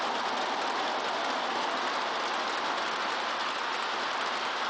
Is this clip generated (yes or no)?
no